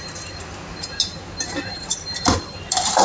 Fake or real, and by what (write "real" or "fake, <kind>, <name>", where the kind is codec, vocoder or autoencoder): real